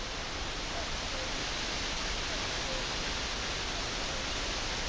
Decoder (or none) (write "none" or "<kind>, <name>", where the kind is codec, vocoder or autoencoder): none